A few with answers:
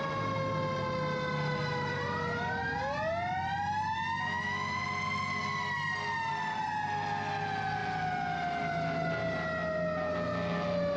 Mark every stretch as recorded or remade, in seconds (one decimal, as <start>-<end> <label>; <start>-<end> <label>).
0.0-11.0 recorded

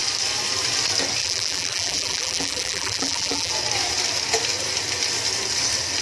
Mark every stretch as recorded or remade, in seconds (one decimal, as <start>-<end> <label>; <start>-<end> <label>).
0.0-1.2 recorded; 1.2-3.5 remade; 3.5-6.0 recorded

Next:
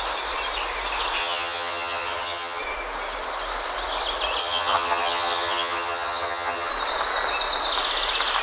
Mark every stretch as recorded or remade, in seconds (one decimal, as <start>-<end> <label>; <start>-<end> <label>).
0.0-1.2 recorded; 1.2-2.6 remade; 2.6-4.4 recorded; 4.4-6.7 remade; 6.7-8.4 recorded

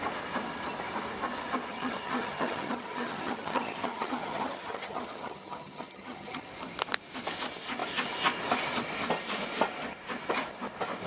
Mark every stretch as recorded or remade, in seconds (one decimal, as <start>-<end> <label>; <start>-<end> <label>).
0.0-1.7 recorded; 1.7-6.4 remade; 6.4-11.1 recorded

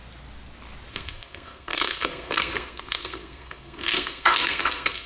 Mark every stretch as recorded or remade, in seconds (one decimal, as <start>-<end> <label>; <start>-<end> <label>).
0.0-0.9 recorded; 0.9-5.1 remade

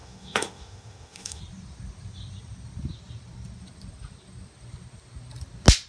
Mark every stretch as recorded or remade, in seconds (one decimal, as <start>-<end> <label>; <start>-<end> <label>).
0.0-1.4 remade; 1.4-5.9 recorded

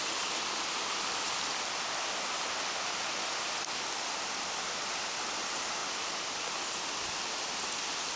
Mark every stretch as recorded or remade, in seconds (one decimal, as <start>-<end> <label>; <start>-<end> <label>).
0.0-8.2 recorded

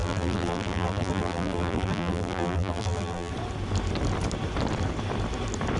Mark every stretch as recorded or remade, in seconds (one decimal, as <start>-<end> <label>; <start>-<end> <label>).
0.0-3.3 remade; 3.3-5.8 recorded